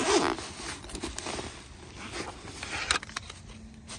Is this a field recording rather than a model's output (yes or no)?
yes